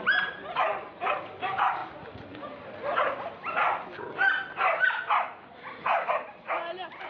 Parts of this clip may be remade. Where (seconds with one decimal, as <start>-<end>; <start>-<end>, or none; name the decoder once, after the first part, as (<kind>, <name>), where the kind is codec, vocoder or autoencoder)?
0.0-1.8 (vocoder, BigVGAN v2); 6.1-7.1